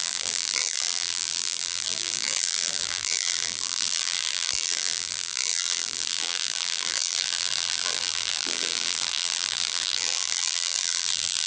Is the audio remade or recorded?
remade